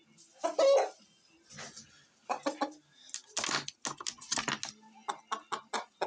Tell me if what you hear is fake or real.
real